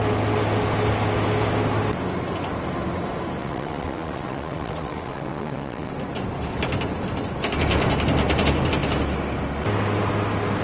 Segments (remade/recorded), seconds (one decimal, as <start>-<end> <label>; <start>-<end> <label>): 0.0-3.4 recorded; 3.4-5.9 remade; 5.9-10.6 recorded